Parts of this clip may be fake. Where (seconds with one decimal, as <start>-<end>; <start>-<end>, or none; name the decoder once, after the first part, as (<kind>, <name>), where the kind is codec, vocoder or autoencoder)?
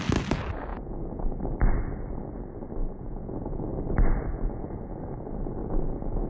0.7-1.4 (vocoder, Vocos); 2.8-3.6; 4.3-5.0; 5.6-6.3